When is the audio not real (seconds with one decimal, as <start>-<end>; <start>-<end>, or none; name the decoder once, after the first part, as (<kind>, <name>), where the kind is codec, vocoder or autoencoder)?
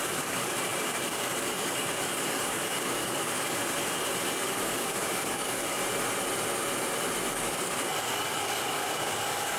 0.0-3.6 (codec, DAC); 4.3-5.8; 7.3-9.6